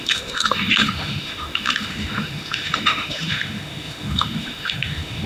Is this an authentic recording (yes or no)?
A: no